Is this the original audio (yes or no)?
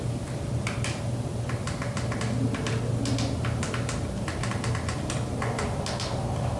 yes